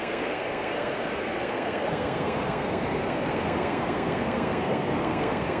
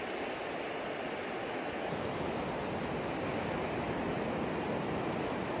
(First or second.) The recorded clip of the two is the second